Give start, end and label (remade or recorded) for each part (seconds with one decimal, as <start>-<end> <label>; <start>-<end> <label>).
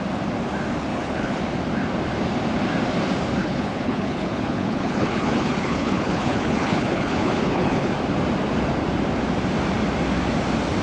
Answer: 0.0-0.9 recorded; 0.9-1.4 remade; 1.4-3.4 recorded; 3.4-7.9 remade; 7.9-10.8 recorded